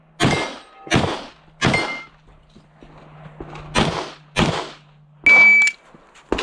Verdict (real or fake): real